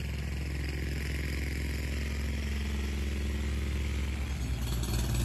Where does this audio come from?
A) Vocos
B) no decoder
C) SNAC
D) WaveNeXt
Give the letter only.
B